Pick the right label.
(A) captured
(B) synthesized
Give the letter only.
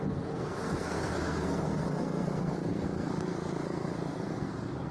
B